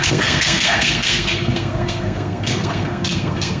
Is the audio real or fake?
fake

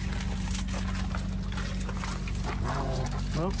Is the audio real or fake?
real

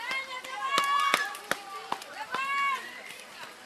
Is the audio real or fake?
real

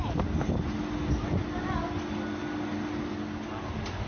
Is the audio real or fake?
real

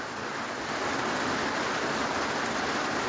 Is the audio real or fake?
real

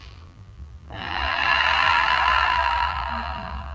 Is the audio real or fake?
fake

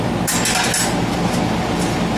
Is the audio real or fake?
real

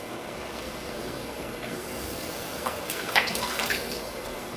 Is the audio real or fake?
fake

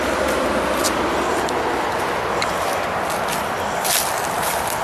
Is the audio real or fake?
real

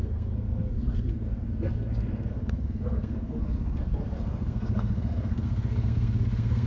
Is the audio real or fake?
fake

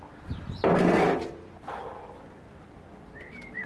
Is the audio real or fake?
real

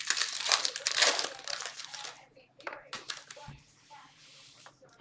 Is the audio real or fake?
fake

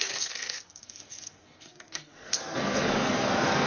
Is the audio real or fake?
fake